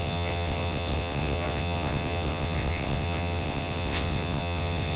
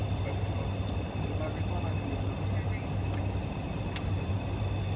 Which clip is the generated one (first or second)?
first